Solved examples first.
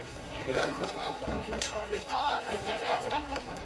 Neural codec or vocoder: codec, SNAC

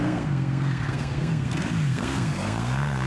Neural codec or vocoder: codec, SNAC